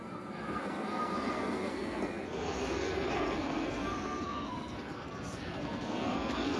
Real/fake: fake